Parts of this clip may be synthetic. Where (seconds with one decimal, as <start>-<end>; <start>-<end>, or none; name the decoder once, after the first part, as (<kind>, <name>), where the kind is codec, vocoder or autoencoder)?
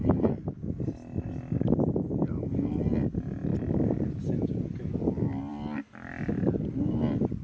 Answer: none